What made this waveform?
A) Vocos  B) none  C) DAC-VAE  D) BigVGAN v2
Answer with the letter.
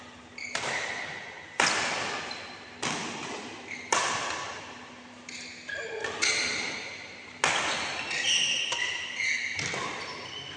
B